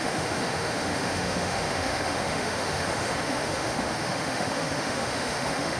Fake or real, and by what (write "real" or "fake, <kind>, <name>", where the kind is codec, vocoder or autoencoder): fake, autoencoder, DAC-VAE